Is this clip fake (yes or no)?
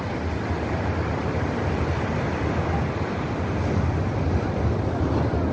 no